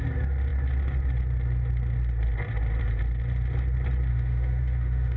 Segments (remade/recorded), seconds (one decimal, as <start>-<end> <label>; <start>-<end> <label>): 0.0-4.1 recorded; 4.1-5.2 remade